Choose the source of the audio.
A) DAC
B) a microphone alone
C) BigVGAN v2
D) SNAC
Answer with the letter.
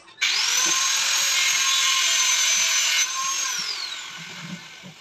B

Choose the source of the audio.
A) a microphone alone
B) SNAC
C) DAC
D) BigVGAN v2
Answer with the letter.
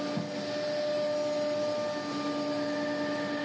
A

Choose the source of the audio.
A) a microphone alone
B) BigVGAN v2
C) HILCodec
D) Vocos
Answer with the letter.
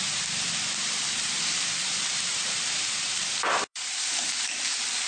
B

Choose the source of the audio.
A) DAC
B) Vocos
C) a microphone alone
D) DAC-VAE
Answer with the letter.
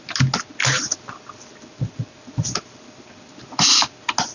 C